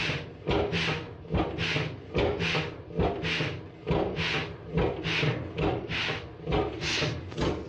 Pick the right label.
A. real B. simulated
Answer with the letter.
A